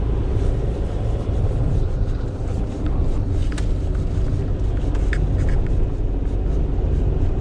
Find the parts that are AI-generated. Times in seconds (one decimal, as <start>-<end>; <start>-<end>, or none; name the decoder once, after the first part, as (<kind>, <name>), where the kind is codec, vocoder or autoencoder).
0.0-3.0 (vocoder, BigVGAN v2)